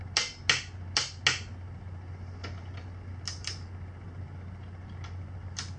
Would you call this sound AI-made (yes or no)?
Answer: no